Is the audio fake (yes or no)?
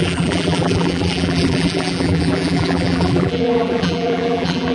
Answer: yes